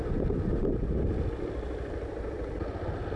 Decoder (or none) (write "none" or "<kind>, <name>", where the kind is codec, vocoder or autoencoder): none